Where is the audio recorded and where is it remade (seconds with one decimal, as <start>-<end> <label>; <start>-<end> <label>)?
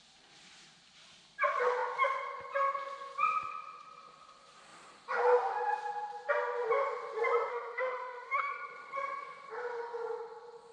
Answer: 0.0-7.5 recorded; 7.5-8.5 remade; 8.5-10.7 recorded